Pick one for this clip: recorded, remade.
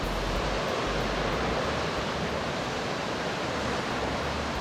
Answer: recorded